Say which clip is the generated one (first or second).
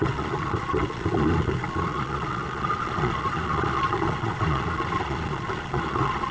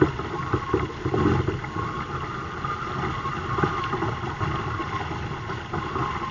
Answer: first